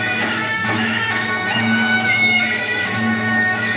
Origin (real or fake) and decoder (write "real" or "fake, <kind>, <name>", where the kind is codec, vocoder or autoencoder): fake, autoencoder, DAC-VAE